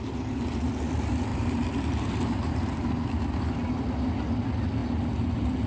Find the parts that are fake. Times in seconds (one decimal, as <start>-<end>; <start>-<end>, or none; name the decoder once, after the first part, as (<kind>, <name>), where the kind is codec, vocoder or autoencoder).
1.3-2.7 (vocoder, BigVGAN v2)